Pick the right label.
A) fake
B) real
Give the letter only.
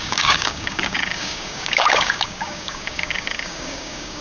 A